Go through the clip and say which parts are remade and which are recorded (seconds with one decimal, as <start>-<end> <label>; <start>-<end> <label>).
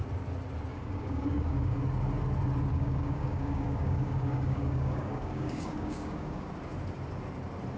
0.0-0.7 recorded; 0.7-1.8 remade; 1.8-2.7 recorded; 2.7-6.5 remade; 6.5-7.8 recorded